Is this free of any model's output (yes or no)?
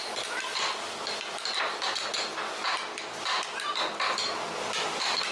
yes